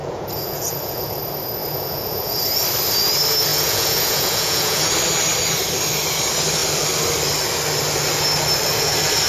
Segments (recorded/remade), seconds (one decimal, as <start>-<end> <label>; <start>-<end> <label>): 0.0-1.2 remade; 1.2-1.6 recorded; 1.6-2.4 remade; 2.4-3.5 recorded; 3.5-4.9 remade; 4.9-9.3 recorded